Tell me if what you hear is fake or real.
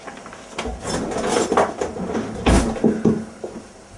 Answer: real